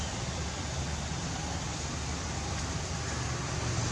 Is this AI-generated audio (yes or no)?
no